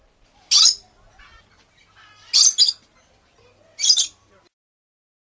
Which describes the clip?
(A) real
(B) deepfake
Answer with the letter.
A